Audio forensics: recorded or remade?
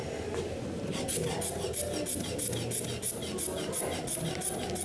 recorded